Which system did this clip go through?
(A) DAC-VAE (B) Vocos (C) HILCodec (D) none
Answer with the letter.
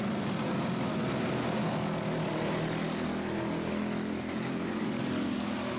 D